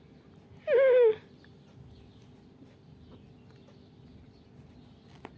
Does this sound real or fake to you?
real